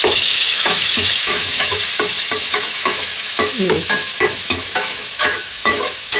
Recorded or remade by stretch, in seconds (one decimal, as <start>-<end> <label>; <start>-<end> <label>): 0.0-1.8 remade; 1.8-2.4 recorded; 2.4-6.2 remade